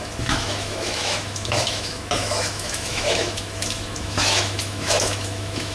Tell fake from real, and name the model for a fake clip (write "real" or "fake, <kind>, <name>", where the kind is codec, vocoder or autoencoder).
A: fake, autoencoder, DAC-VAE